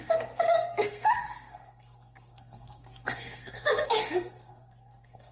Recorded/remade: remade